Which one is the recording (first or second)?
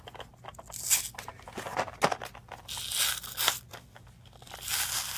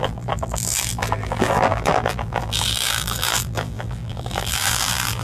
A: first